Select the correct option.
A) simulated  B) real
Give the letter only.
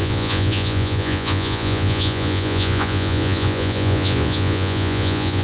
A